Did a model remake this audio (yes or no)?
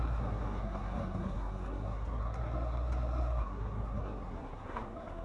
yes